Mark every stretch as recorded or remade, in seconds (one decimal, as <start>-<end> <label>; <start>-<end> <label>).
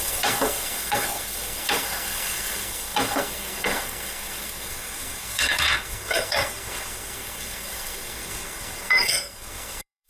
0.0-10.1 remade